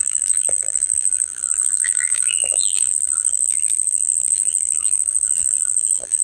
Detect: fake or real fake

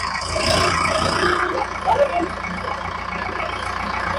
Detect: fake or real fake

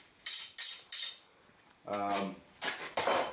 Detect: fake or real fake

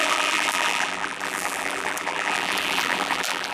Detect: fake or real fake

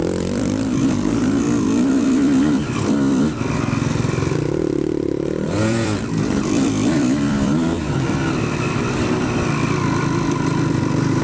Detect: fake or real fake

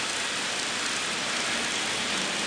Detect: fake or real real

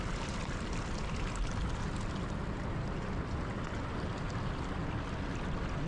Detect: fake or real real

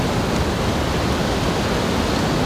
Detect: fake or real real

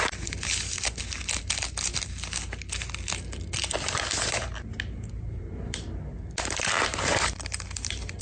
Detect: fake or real real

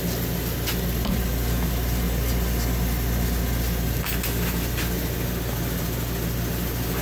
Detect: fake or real real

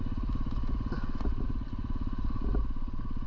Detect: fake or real real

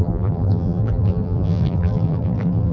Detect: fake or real fake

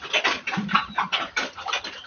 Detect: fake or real fake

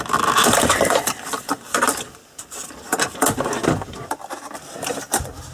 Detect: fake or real fake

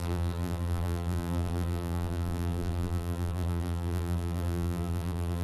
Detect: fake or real fake